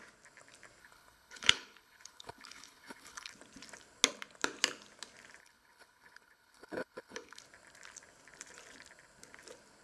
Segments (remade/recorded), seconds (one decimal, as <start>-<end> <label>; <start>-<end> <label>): 0.0-0.8 recorded; 0.8-3.3 remade; 3.3-5.4 recorded; 5.4-7.4 remade; 7.4-9.8 recorded